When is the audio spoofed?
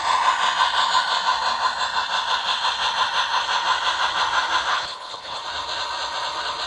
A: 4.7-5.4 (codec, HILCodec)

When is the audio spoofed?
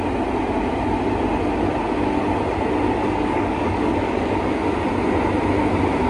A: 3.0-4.5 (codec, DAC)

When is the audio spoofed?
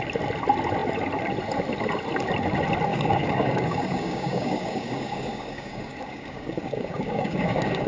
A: 2.9-7.9 (codec, DAC)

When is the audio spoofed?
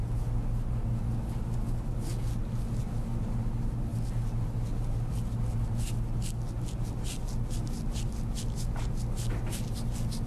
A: none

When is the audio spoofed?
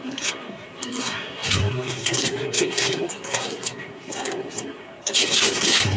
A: 0.0-6.0 (codec, SNAC)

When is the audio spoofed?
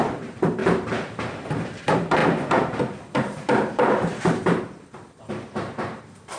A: 0.0-6.4 (vocoder, BigVGAN v2)